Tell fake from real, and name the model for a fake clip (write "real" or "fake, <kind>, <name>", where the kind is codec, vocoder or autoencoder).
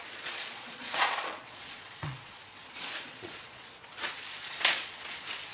fake, vocoder, Vocos